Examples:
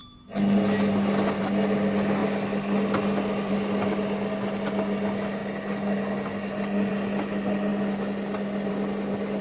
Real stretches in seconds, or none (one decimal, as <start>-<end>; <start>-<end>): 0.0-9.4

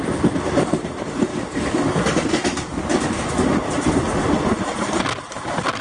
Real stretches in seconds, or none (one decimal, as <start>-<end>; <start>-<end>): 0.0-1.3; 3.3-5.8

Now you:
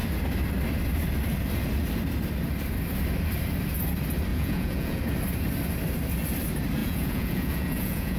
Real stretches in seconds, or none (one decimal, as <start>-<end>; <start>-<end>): 0.0-4.3; 5.0-6.8

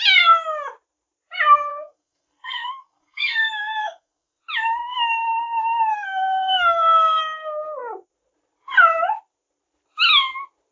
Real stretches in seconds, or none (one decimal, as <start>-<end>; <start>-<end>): 0.0-1.7; 4.4-5.9; 7.2-10.7

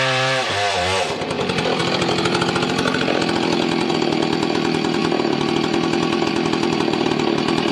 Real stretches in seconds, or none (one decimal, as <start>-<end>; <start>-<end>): 1.8-3.9; 5.0-6.3

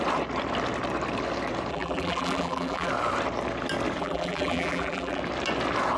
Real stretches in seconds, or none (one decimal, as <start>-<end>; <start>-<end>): 0.0-1.7; 2.9-4.0; 5.2-6.0